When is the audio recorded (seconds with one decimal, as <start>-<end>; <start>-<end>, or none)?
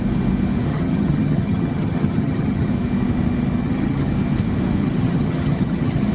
0.0-0.7; 2.7-3.6; 4.1-4.8